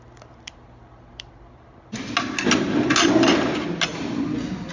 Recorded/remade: recorded